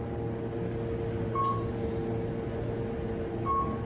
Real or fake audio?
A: real